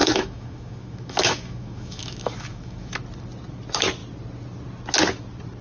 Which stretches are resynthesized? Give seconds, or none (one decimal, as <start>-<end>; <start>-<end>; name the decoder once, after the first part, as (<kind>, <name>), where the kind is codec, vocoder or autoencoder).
0.0-2.9 (autoencoder, DAC-VAE)